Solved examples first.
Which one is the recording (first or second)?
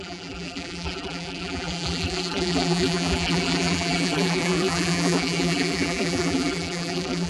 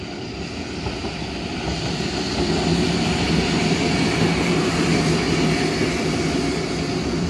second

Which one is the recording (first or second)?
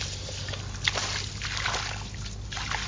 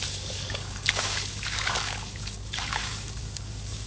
first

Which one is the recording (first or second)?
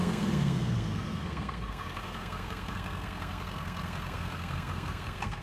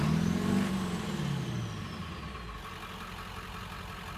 second